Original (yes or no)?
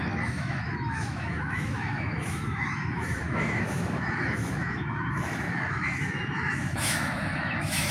no